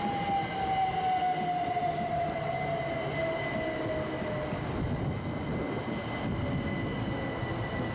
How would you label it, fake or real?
real